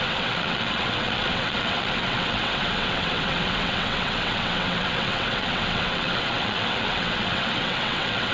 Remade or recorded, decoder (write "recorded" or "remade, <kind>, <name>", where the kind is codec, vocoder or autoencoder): remade, vocoder, WaveNeXt